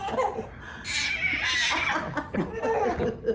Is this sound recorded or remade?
recorded